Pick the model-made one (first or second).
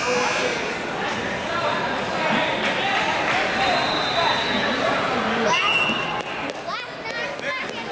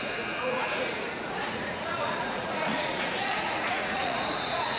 second